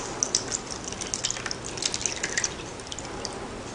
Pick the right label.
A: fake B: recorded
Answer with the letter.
B